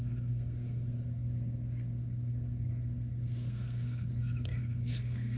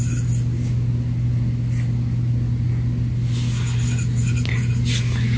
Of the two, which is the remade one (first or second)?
first